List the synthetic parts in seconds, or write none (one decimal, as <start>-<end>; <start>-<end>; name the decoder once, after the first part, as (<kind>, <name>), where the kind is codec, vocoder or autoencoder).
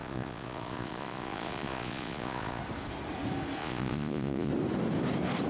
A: 0.0-2.6 (vocoder, Vocos); 3.6-4.5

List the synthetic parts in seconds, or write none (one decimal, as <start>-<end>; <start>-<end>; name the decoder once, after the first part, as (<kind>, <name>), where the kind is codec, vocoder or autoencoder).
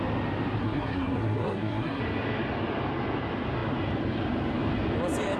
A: 0.6-2.0 (codec, SNAC)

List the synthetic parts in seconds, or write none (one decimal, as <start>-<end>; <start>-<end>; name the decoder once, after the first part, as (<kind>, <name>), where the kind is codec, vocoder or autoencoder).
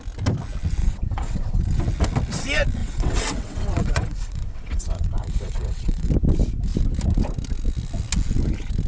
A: 0.8-1.5 (vocoder, WaveNeXt); 2.8-6.1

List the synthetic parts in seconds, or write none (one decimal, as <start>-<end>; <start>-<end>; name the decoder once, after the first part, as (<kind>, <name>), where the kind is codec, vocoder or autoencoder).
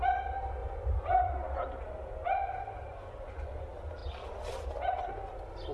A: 0.6-1.3 (vocoder, Vocos); 2.9-3.5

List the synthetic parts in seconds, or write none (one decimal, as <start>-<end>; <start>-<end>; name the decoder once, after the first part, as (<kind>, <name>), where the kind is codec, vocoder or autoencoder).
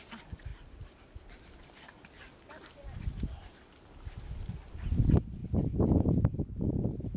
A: none